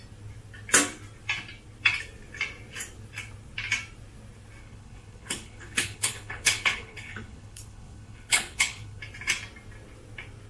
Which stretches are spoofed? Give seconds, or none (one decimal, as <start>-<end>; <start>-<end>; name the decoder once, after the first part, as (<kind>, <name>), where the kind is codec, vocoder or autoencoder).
4.6-9.0 (codec, HILCodec)